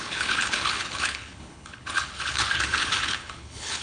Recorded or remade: remade